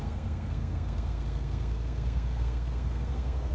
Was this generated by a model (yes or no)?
yes